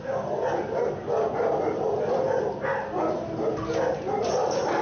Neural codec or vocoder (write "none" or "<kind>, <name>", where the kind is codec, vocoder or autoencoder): none